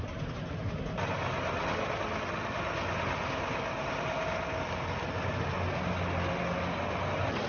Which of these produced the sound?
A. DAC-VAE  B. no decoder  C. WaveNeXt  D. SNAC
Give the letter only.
B